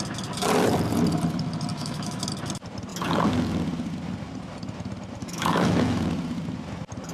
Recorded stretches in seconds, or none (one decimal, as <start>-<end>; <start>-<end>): 0.0-1.7; 2.2-5.2; 6.0-7.1